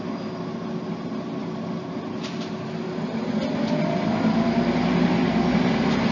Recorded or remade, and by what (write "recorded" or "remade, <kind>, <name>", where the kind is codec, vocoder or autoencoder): recorded